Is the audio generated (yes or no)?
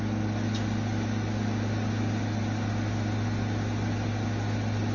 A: no